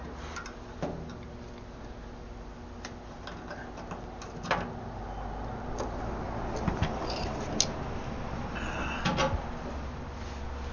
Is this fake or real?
real